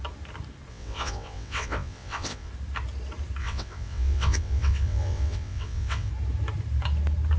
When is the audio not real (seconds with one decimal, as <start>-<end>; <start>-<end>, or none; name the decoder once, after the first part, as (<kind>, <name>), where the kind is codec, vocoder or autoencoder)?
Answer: 0.7-2.5 (vocoder, WaveNeXt); 3.4-6.1

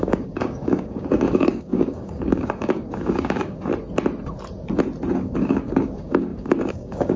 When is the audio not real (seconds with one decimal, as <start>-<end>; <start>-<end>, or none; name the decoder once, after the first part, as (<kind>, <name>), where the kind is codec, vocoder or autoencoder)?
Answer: 0.0-3.7 (codec, DAC); 5.1-7.2

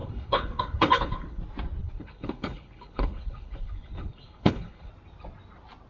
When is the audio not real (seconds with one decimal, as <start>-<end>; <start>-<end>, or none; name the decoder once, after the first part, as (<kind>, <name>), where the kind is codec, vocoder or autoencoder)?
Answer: 0.0-1.4 (codec, HILCodec); 1.8-4.9

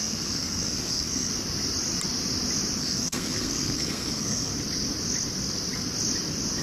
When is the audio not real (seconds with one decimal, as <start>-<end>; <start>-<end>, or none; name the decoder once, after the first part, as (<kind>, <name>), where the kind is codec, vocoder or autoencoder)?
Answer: 0.0-1.3 (codec, SNAC); 2.8-4.5

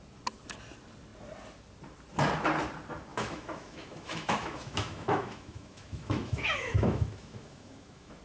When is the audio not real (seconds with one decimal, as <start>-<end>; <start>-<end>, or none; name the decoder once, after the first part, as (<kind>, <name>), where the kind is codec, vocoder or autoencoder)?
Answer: 3.1-8.2 (autoencoder, DAC-VAE)

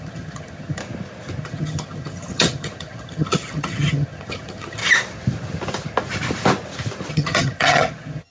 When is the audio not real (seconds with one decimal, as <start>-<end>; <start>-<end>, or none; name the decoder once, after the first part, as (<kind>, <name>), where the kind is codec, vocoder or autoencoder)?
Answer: 0.0-0.8 (vocoder, HiFi-GAN); 1.4-4.8; 7.1-8.3

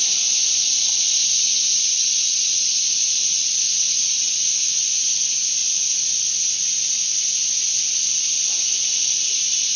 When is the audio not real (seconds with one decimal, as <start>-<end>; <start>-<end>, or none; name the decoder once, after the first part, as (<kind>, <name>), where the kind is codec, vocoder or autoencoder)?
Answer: 1.2-2.9 (vocoder, WaveNeXt)

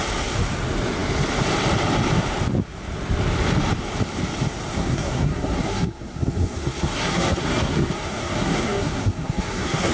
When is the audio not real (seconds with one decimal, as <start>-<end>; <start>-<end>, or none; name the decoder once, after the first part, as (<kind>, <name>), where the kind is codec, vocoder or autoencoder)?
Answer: 4.7-9.9 (codec, SNAC)